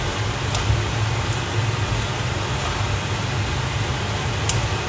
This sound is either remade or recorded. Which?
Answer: recorded